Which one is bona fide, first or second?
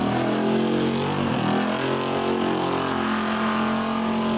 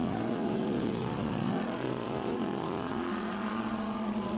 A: first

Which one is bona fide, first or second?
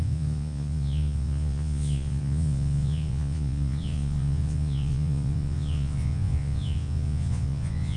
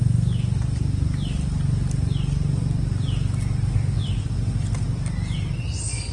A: second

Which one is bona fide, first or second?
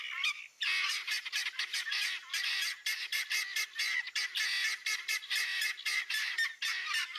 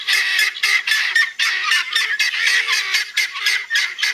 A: first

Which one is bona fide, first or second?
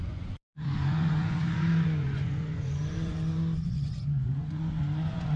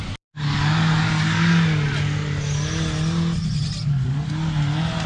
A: second